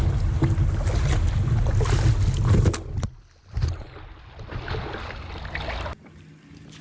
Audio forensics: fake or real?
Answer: real